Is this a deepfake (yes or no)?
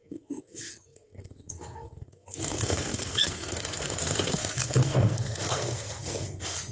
yes